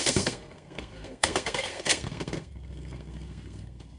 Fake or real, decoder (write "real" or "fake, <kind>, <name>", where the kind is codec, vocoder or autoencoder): fake, codec, SNAC